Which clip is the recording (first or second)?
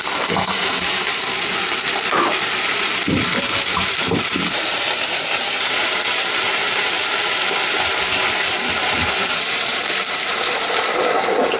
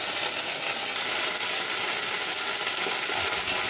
second